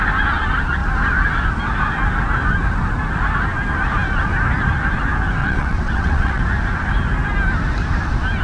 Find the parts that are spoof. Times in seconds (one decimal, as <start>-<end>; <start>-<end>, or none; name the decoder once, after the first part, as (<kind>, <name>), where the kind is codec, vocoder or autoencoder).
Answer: 5.4-6.4 (vocoder, WaveNeXt)